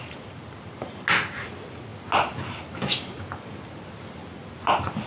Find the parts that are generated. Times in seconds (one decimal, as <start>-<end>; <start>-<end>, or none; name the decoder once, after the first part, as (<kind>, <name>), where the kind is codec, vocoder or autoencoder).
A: none